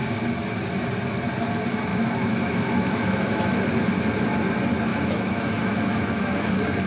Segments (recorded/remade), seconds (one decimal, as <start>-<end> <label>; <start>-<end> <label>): 0.0-1.9 recorded; 1.9-3.9 remade; 3.9-4.9 recorded; 4.9-6.5 remade; 6.5-6.9 recorded

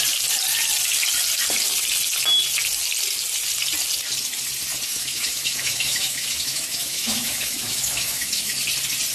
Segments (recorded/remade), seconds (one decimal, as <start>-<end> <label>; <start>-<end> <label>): 0.0-4.9 recorded; 4.9-8.5 remade; 8.5-9.1 recorded

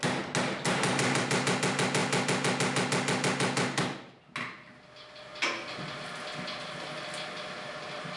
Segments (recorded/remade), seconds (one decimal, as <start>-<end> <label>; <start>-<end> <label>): 0.0-8.2 recorded

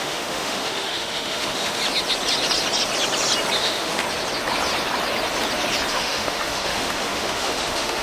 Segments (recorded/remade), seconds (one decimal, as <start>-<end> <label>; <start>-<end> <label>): 0.0-1.8 remade; 1.8-3.6 recorded; 3.6-4.0 remade; 4.0-5.9 recorded; 5.9-8.0 remade

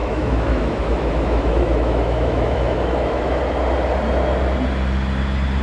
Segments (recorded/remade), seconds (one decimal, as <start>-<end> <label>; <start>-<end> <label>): 0.0-3.4 remade; 3.4-5.6 recorded

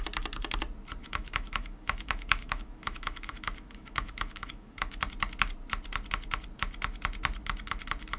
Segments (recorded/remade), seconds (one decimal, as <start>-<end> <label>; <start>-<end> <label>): 0.0-1.0 recorded; 1.0-5.0 remade; 5.0-8.2 recorded

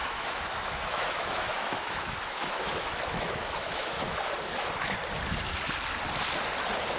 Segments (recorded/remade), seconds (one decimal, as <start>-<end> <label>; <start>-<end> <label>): 0.0-4.2 remade; 4.2-7.0 recorded